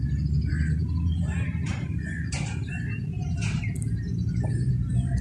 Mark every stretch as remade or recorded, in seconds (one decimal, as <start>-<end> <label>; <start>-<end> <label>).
0.0-5.2 recorded